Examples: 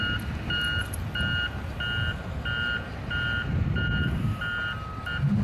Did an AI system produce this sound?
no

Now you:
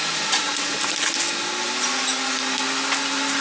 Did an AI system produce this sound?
no